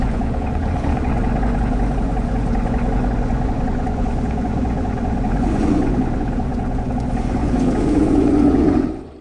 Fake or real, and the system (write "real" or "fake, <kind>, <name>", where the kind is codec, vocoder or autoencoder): fake, vocoder, Vocos